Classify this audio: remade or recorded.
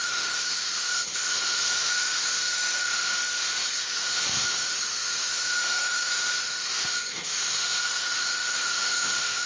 remade